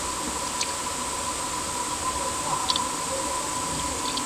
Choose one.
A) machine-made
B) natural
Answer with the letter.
B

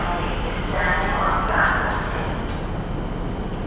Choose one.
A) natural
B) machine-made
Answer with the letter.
A